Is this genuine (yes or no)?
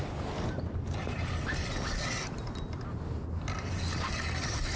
yes